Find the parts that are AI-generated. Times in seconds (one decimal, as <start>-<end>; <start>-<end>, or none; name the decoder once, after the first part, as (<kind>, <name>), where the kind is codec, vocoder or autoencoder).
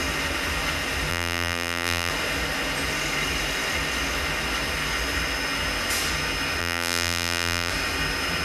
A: 1.1-2.1 (vocoder, BigVGAN v2); 6.6-7.7